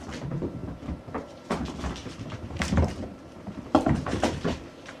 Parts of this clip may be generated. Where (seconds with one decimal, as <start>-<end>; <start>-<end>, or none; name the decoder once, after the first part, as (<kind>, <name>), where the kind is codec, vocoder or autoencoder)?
2.0-5.0 (vocoder, BigVGAN v2)